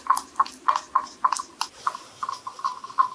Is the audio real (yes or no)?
yes